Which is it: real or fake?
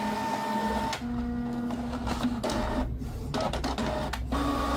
real